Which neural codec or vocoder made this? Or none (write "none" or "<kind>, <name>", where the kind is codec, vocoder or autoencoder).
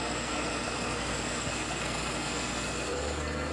codec, SNAC